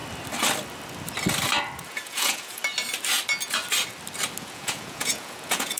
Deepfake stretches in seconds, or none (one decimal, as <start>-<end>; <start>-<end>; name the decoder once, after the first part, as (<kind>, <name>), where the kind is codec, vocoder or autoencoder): 1.8-2.6 (vocoder, Vocos); 4.4-5.8